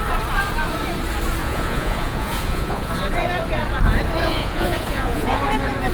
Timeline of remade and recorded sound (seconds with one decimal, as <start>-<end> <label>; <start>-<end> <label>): 0.0-1.4 recorded; 1.4-2.9 remade; 2.9-4.2 recorded; 4.2-5.4 remade; 5.4-5.9 recorded